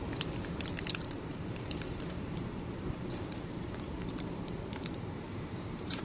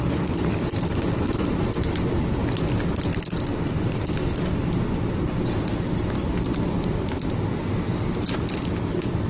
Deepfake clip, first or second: first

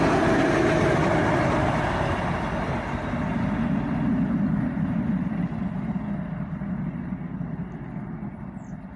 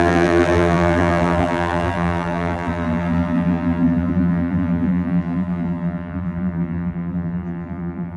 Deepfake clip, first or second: second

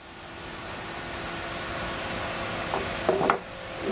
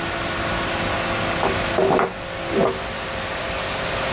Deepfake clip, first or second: first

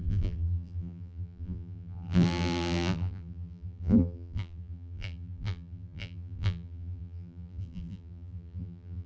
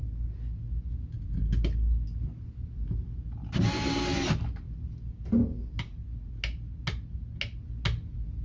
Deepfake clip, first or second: first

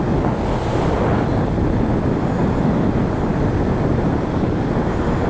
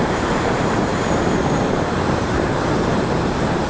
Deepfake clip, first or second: second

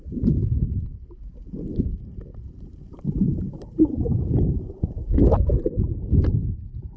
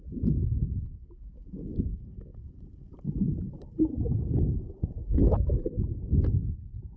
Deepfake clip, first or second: first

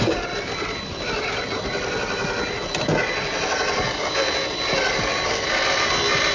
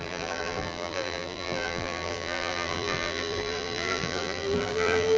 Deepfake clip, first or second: second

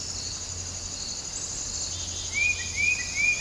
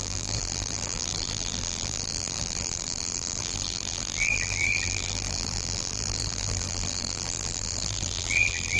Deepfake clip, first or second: second